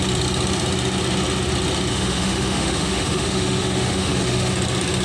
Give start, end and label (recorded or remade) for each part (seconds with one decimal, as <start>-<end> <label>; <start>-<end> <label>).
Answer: 0.0-1.9 recorded; 1.9-4.5 remade; 4.5-5.0 recorded